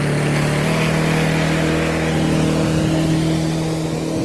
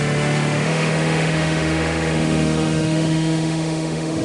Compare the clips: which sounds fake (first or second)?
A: second